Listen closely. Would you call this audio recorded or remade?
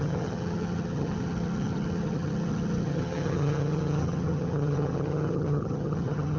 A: remade